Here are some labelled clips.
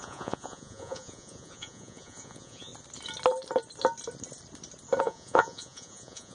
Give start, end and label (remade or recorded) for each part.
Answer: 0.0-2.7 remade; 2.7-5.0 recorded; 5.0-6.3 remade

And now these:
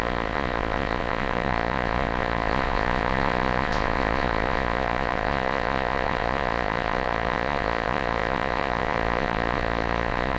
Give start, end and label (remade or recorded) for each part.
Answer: 0.0-10.4 remade

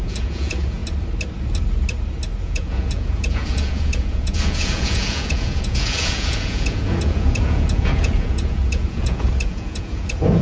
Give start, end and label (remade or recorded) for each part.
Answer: 0.0-0.8 remade; 0.8-2.4 recorded; 2.4-10.4 remade

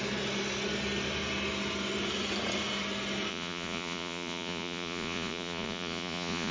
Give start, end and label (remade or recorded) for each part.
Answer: 0.0-3.3 recorded; 3.3-6.5 remade